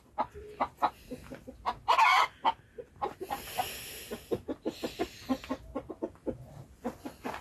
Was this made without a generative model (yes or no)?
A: yes